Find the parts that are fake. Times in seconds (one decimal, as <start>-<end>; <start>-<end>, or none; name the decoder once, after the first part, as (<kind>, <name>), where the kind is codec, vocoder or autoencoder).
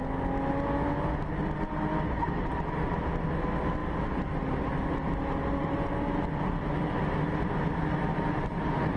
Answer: none